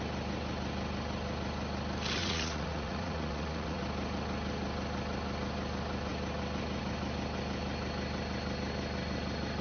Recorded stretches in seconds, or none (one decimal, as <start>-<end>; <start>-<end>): 0.0-2.2; 3.8-9.6